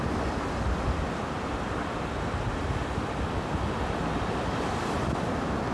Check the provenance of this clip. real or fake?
real